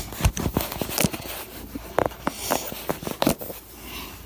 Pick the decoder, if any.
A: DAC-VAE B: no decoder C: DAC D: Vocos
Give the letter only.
B